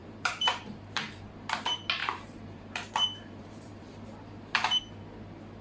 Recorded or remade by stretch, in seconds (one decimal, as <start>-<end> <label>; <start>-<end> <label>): 0.0-1.3 remade; 1.3-2.0 recorded; 2.0-4.8 remade; 4.8-5.6 recorded